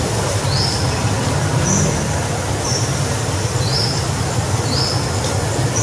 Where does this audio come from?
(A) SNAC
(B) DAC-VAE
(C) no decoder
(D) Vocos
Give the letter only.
C